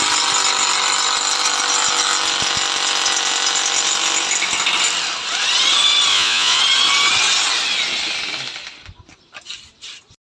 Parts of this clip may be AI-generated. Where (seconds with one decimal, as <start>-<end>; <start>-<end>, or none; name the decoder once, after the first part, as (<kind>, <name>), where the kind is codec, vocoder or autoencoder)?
6.1-6.6 (vocoder, Vocos)